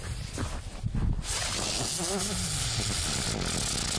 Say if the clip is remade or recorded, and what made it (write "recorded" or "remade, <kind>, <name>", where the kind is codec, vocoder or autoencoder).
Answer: recorded